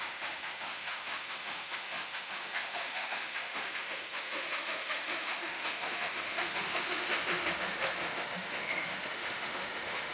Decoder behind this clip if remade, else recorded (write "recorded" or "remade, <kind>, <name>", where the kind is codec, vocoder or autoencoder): remade, autoencoder, DAC-VAE